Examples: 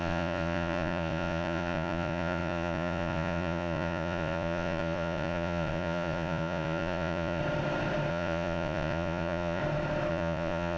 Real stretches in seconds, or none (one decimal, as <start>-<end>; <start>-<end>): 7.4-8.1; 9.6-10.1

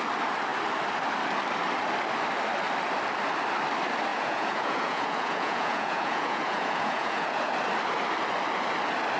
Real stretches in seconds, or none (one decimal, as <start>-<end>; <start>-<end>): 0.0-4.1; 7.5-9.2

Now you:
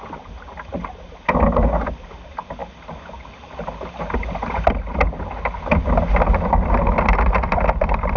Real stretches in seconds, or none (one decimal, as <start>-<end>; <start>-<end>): 0.0-8.2

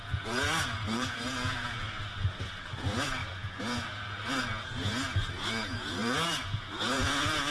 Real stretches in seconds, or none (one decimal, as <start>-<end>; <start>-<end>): none

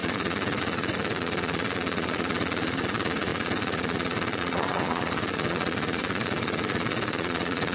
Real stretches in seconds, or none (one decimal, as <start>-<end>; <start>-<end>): none